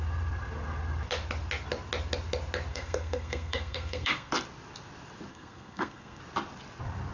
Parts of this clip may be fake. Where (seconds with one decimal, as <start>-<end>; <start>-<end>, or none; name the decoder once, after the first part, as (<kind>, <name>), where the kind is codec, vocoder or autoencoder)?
2.7-4.3 (codec, SNAC); 5.3-6.2